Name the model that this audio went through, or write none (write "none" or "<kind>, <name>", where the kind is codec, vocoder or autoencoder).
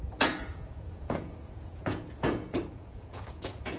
vocoder, Vocos